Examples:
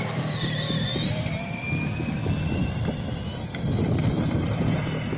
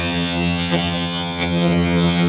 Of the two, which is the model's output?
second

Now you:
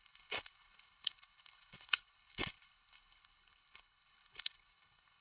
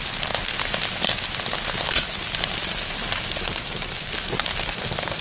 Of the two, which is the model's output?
first